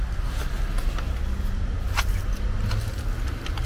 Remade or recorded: recorded